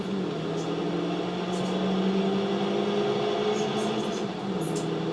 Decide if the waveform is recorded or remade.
recorded